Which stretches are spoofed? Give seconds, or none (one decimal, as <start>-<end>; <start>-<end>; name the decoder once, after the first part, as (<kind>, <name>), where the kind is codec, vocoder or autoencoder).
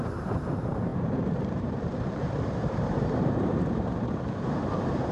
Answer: 0.0-5.1 (vocoder, BigVGAN v2)